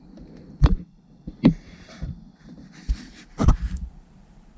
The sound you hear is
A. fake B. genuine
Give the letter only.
A